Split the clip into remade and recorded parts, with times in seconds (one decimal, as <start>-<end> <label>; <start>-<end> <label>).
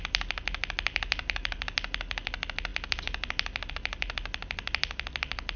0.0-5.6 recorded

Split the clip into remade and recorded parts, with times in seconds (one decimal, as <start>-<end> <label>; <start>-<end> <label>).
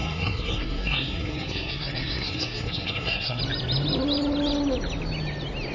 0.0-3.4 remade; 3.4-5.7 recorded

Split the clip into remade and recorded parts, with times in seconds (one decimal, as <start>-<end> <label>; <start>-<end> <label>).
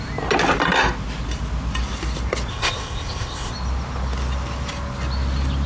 0.0-2.5 recorded; 2.5-3.5 remade; 3.5-5.7 recorded